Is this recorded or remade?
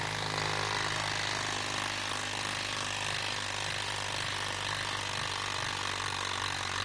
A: recorded